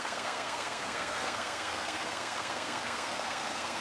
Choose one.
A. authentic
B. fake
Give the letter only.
B